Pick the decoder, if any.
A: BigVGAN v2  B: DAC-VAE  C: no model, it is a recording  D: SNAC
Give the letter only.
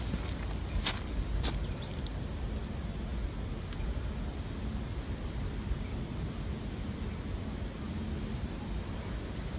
C